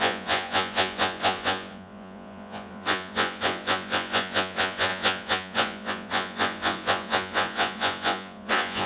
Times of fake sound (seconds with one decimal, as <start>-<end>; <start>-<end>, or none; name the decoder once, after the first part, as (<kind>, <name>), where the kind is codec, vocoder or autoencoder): 0.0-8.9 (vocoder, Vocos)